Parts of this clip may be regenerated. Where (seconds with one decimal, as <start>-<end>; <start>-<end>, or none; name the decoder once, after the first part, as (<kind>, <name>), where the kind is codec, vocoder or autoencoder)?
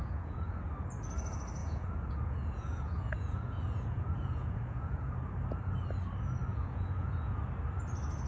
0.0-0.5 (vocoder, Vocos); 1.6-5.1; 6.5-7.4